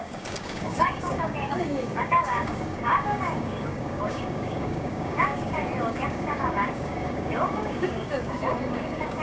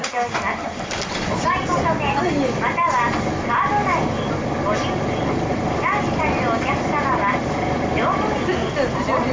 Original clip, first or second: second